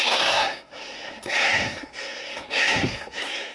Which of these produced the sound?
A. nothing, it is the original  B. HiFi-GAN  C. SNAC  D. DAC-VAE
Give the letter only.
C